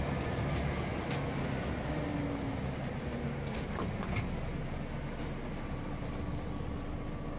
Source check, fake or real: real